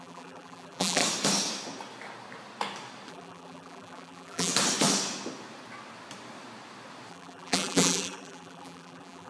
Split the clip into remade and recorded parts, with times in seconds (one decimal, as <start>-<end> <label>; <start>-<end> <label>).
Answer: 0.0-1.0 remade; 1.0-3.1 recorded; 3.1-4.5 remade; 4.5-7.1 recorded; 7.1-9.3 remade